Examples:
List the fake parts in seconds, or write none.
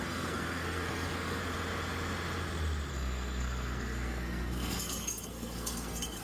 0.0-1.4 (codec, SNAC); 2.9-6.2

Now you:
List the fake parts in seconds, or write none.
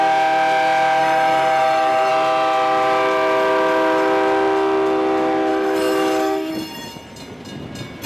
1.0-2.1 (codec, DAC); 5.5-6.5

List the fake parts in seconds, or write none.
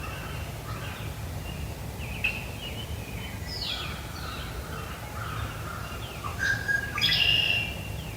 6.3-6.8 (vocoder, BigVGAN v2)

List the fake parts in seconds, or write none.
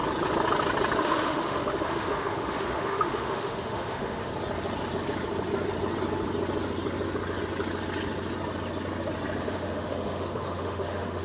1.0-4.3 (autoencoder, DAC-VAE); 9.4-11.2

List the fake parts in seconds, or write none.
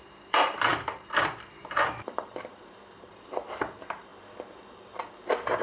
0.0-4.1 (vocoder, BigVGAN v2); 5.1-5.6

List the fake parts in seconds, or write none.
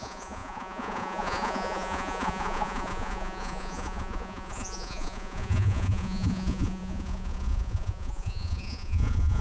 0.0-9.4 (vocoder, Vocos)